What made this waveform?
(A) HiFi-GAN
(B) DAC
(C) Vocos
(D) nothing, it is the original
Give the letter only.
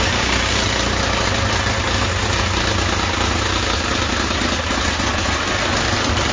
D